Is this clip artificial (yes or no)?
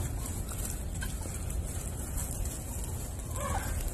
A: no